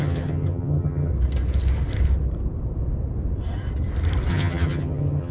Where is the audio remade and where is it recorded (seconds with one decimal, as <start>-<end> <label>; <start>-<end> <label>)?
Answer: 0.0-1.1 remade; 1.1-4.3 recorded; 4.3-5.3 remade